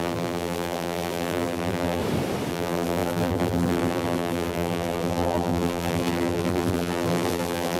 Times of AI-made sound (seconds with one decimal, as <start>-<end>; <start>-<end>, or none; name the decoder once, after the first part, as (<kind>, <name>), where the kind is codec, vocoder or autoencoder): 0.0-2.0 (vocoder, BigVGAN v2); 2.5-7.8